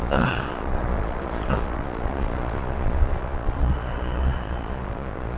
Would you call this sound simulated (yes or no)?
yes